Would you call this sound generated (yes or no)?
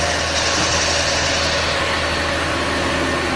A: no